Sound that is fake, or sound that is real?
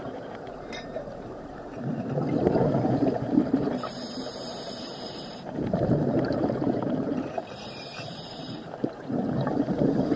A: fake